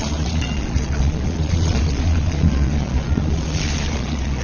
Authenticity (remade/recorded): remade